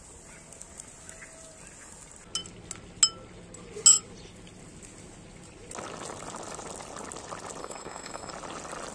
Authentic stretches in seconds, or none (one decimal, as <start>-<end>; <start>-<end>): 0.0-7.6; 8.3-8.9